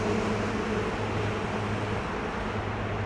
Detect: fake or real real